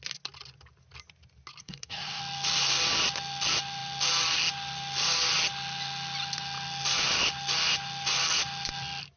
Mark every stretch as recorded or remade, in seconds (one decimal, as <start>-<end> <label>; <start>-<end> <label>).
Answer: 0.0-1.6 recorded; 1.6-2.2 remade; 2.2-9.2 recorded